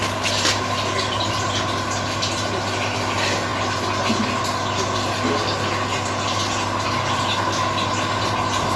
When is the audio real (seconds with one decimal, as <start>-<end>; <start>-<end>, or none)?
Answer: 0.0-8.8

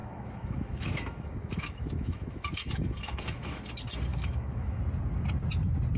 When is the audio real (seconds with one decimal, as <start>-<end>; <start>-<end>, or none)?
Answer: 3.6-4.1; 4.8-6.0

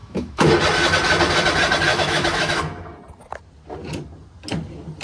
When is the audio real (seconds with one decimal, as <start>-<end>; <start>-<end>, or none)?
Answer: 0.5-1.9; 2.6-5.0